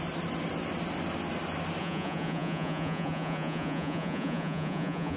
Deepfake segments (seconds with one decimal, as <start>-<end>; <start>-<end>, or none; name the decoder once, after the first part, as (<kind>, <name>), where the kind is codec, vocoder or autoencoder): 1.8-5.2 (vocoder, Vocos)